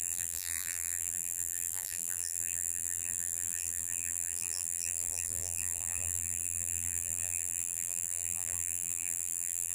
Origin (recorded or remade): remade